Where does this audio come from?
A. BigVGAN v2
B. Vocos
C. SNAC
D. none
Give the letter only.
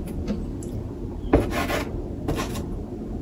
D